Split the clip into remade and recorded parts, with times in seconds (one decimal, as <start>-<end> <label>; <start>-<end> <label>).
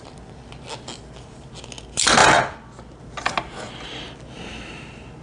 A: 0.0-5.2 recorded